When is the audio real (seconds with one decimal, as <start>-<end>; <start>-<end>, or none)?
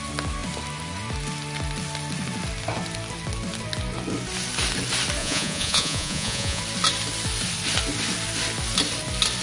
0.0-5.2; 6.6-9.4